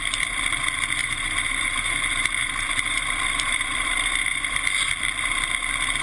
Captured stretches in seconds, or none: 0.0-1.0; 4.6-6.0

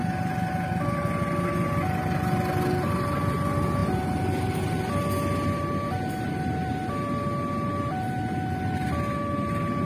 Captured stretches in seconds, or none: 0.0-9.9

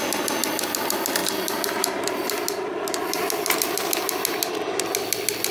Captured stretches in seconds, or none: 0.0-1.2; 4.5-5.5